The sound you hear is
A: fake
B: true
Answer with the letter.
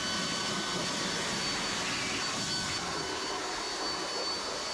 B